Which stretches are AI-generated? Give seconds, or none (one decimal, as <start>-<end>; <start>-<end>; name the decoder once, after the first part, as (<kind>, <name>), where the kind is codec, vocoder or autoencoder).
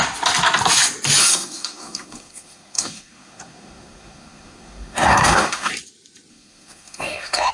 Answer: 1.2-5.7 (codec, SNAC); 6.3-7.5